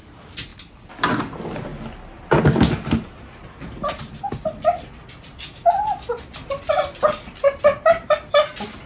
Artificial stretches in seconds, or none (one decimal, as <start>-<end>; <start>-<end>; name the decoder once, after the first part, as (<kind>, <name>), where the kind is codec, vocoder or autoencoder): none